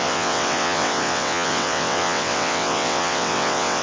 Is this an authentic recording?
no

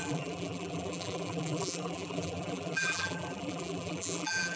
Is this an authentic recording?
no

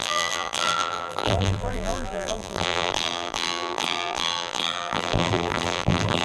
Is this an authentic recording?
no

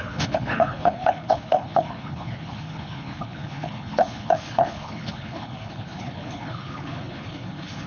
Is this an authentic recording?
no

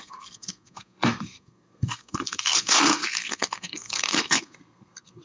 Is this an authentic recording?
no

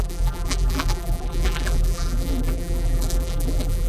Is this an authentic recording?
no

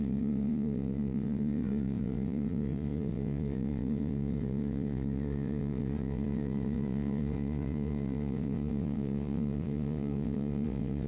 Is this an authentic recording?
no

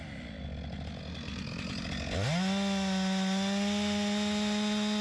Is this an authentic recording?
yes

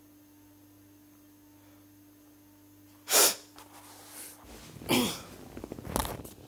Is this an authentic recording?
yes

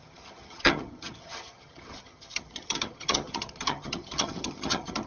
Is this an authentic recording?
no